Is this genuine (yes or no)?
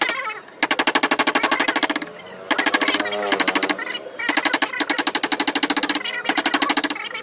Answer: yes